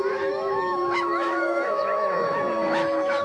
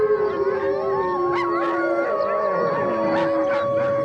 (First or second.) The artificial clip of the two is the first